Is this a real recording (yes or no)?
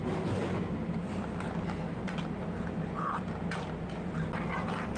yes